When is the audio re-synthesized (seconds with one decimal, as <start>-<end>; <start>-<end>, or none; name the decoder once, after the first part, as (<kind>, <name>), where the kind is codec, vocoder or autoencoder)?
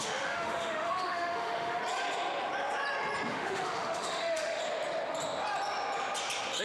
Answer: 0.0-1.8 (autoencoder, DAC-VAE); 3.3-4.6